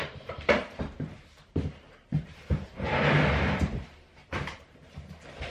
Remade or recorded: remade